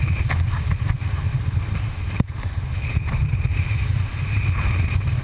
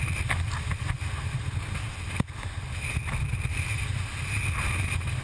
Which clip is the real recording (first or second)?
second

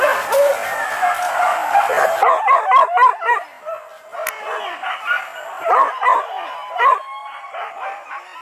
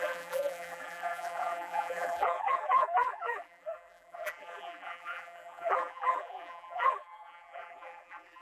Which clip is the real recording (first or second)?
first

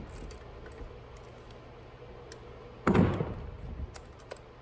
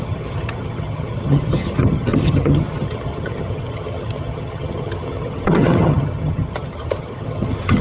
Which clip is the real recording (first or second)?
first